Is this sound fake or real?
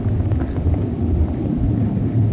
real